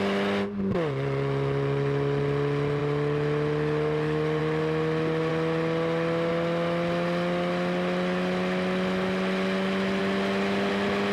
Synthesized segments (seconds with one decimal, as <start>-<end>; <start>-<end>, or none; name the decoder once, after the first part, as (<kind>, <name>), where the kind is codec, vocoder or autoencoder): none